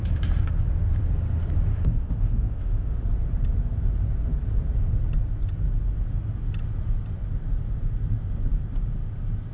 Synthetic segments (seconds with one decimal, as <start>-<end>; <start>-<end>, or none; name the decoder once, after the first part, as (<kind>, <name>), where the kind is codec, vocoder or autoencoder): 1.7-3.0 (autoencoder, DAC-VAE)